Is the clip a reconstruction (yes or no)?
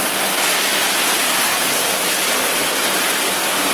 yes